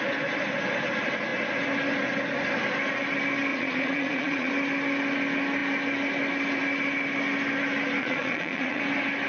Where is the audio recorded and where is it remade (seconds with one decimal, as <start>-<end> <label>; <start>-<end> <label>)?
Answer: 0.0-3.5 recorded; 3.5-4.5 remade; 4.5-8.0 recorded; 8.0-8.8 remade; 8.8-9.3 recorded